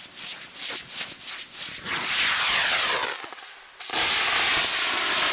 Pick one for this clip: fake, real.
real